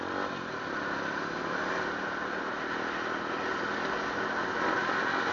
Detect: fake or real real